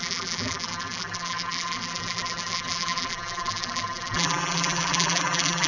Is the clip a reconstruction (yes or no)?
yes